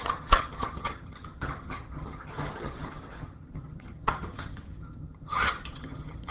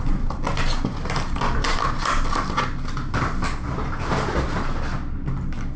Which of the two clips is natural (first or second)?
second